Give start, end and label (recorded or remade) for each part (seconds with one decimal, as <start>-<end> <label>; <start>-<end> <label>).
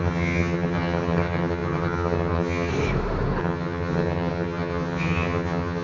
0.0-2.7 remade; 2.7-3.4 recorded; 3.4-5.8 remade